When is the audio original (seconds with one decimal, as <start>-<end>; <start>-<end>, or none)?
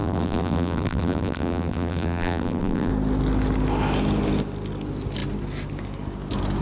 2.9-6.6